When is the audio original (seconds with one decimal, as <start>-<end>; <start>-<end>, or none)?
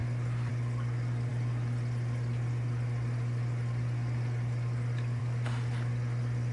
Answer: 0.0-6.5